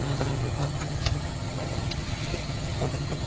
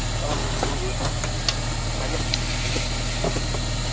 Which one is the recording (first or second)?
second